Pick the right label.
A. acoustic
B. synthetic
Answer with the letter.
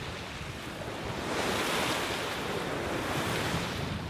A